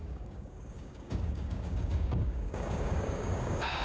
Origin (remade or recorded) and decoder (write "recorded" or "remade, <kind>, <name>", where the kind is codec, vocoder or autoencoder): remade, codec, DAC